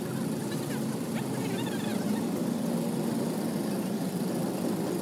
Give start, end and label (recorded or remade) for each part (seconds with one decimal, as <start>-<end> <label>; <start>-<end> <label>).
0.0-0.4 recorded; 0.4-1.2 remade; 1.2-5.0 recorded